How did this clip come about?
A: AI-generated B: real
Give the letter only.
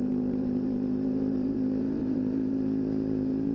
A